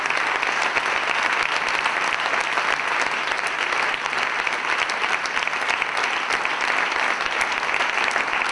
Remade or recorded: recorded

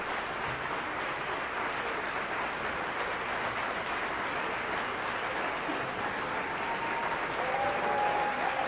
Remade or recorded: recorded